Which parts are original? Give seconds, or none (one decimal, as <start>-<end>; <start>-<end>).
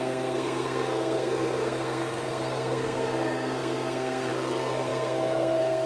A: none